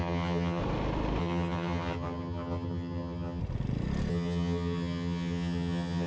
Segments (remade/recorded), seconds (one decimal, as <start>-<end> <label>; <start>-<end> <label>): 0.0-0.6 remade; 0.6-1.2 recorded; 1.2-3.4 remade; 3.4-4.1 recorded; 4.1-6.1 remade